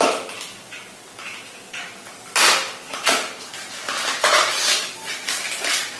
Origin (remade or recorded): recorded